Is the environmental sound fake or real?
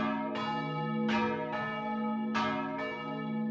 real